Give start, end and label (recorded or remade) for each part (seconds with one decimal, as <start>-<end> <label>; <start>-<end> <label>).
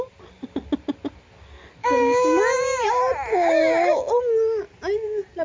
0.0-1.8 recorded; 1.8-2.4 remade; 2.4-3.3 recorded; 3.3-4.1 remade; 4.1-5.4 recorded